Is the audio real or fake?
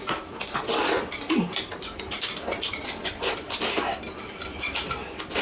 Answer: real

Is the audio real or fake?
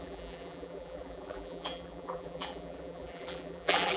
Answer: fake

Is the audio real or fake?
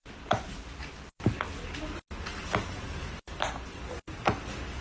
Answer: real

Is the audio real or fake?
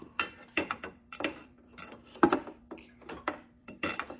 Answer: fake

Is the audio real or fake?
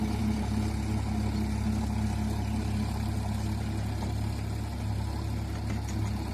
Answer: real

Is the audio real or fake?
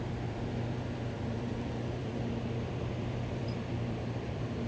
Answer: fake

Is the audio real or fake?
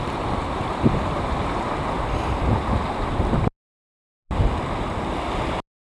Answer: real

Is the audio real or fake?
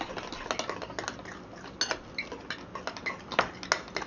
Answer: real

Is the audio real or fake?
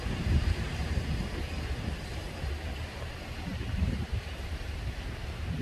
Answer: fake